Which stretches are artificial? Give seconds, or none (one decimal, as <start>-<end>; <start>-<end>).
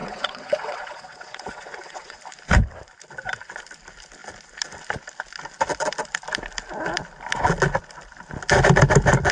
0.0-2.2